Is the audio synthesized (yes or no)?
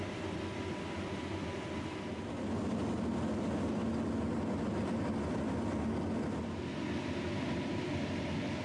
no